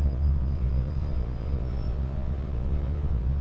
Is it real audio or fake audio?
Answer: fake